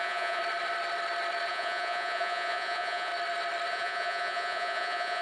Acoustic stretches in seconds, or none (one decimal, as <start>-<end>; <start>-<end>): 0.4-1.5; 3.1-3.7